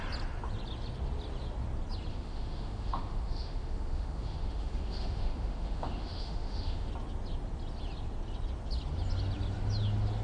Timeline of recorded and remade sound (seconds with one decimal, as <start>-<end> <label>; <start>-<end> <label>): 0.0-2.1 recorded; 2.1-6.9 remade; 6.9-10.2 recorded